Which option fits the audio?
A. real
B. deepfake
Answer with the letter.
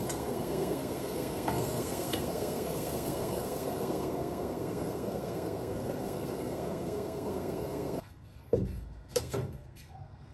B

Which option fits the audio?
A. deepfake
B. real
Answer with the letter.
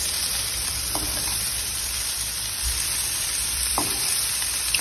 A